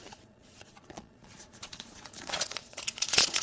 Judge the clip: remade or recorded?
remade